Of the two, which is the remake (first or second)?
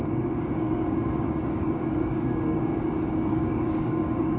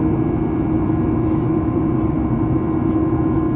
first